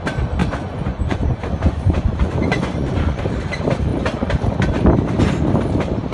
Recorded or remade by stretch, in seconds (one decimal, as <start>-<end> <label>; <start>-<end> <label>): 0.0-0.4 recorded; 0.4-3.2 remade; 3.2-6.1 recorded